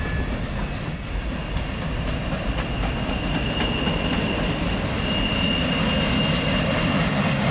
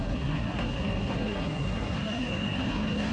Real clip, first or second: first